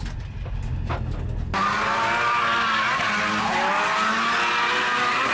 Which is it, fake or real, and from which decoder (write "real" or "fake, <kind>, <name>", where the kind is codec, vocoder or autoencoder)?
real